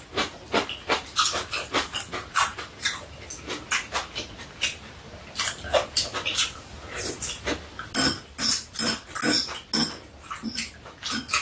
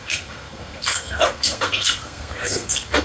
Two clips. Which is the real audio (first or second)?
first